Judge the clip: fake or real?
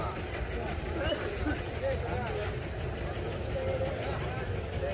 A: fake